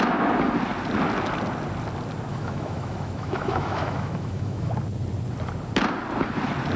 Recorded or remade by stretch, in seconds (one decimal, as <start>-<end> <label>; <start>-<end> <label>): 0.0-2.3 recorded; 2.3-4.7 remade; 4.7-6.8 recorded

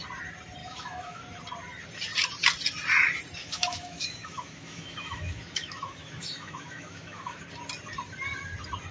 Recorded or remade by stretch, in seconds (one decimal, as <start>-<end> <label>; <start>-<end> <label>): 0.0-0.6 recorded; 0.6-1.2 remade; 1.2-3.4 recorded; 3.4-7.4 remade; 7.4-8.9 recorded

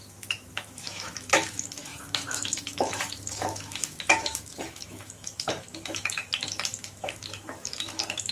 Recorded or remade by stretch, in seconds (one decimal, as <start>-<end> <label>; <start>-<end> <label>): 0.0-8.3 remade

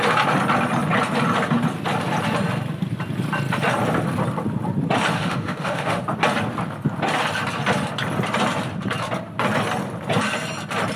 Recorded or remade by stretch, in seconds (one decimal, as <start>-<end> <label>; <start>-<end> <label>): 0.0-5.2 recorded; 5.2-6.0 remade; 6.0-11.0 recorded

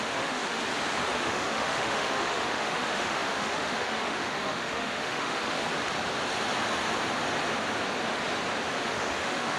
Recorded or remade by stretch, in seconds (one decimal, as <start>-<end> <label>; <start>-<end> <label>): 0.0-0.6 remade; 0.6-1.1 recorded; 1.1-5.6 remade; 5.6-8.8 recorded; 8.8-9.6 remade

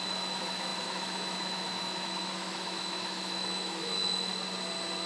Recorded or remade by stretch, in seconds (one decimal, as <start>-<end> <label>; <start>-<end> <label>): 0.0-4.3 remade; 4.3-5.1 recorded